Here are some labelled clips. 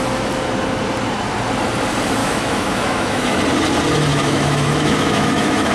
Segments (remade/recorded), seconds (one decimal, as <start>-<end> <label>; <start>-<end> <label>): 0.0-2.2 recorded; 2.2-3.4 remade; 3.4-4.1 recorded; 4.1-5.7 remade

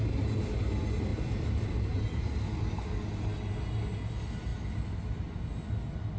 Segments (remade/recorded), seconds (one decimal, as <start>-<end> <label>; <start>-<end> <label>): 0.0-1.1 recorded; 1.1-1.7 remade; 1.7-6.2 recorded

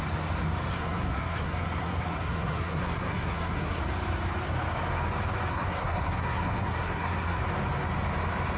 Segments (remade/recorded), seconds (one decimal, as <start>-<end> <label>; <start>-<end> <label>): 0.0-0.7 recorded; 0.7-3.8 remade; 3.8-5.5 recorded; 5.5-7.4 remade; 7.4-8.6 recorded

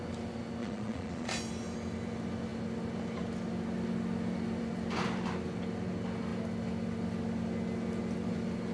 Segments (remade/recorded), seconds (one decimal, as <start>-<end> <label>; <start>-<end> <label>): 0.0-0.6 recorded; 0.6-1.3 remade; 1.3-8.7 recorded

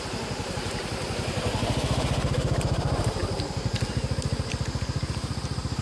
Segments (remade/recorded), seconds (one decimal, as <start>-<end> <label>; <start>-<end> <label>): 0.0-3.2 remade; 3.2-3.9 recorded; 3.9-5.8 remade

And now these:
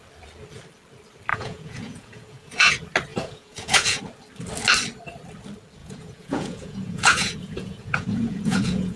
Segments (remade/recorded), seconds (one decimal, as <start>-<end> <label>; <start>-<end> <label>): 0.0-1.3 recorded; 1.3-2.7 remade; 2.7-3.1 recorded; 3.1-4.0 remade; 4.0-5.8 recorded; 5.8-9.0 remade

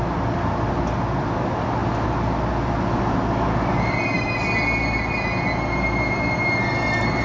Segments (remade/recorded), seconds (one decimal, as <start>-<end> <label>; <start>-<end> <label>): 0.0-7.2 recorded